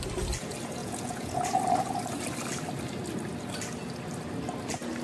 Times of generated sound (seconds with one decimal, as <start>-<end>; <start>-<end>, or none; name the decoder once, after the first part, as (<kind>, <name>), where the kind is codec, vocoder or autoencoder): 0.8-1.6 (vocoder, Vocos)